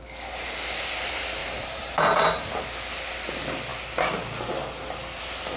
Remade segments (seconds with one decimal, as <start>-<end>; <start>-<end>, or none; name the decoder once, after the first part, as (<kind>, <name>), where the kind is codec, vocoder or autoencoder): 1.4-2.6 (vocoder, BigVGAN v2)